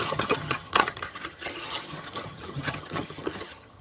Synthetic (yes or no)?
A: yes